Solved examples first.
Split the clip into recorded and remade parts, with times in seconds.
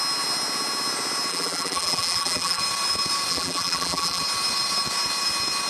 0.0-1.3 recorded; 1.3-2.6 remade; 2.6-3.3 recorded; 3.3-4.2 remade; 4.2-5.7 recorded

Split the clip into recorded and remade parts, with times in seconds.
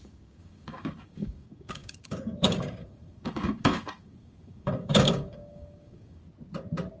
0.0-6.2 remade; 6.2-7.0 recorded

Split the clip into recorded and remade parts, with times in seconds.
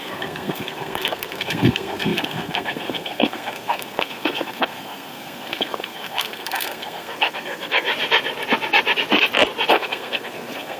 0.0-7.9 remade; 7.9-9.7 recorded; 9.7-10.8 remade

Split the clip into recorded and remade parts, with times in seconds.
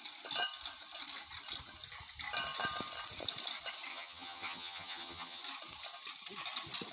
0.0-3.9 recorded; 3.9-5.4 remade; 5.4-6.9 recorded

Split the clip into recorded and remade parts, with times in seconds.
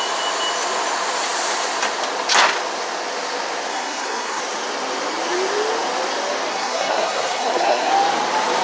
0.0-3.7 recorded; 3.7-4.4 remade; 4.4-6.5 recorded; 6.5-7.9 remade; 7.9-8.6 recorded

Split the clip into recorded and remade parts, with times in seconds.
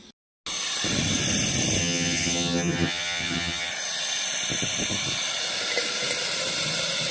0.0-1.8 recorded; 1.8-3.7 remade; 3.7-7.1 recorded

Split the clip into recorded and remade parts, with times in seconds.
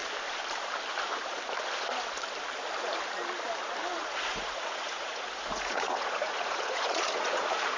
0.0-4.0 recorded; 4.0-7.8 remade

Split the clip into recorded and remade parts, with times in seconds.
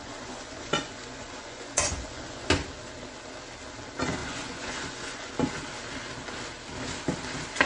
0.0-2.5 remade; 2.5-4.2 recorded; 4.2-5.3 remade; 5.3-7.7 recorded